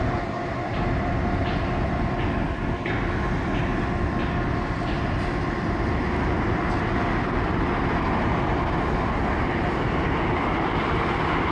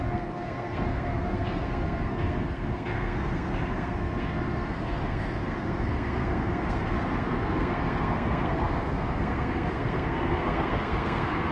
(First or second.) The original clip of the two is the first